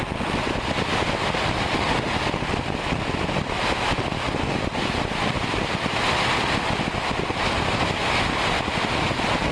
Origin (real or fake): real